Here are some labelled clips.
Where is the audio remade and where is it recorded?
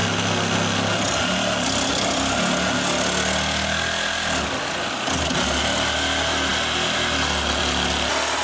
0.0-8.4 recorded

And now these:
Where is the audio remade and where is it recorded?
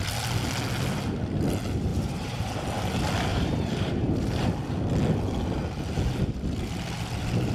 0.0-1.9 recorded; 1.9-2.5 remade; 2.5-3.3 recorded; 3.3-4.5 remade; 4.5-7.5 recorded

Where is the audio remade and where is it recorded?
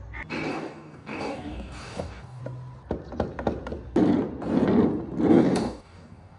0.0-0.5 recorded; 0.5-2.4 remade; 2.4-5.3 recorded; 5.3-6.4 remade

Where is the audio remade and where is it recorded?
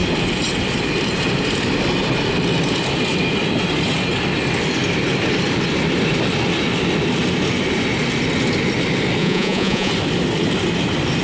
0.0-9.2 recorded; 9.2-9.9 remade; 9.9-11.2 recorded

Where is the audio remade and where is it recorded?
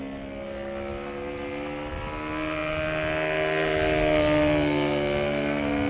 0.0-5.9 recorded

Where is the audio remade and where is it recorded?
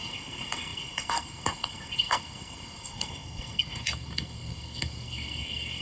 0.0-5.8 remade